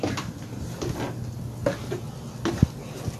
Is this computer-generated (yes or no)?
no